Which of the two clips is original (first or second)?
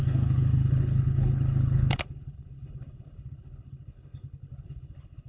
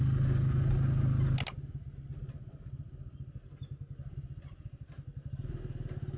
second